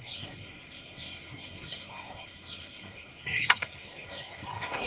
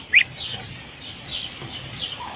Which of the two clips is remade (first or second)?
first